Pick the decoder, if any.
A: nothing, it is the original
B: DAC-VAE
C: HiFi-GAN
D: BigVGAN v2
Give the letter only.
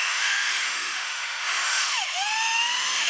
B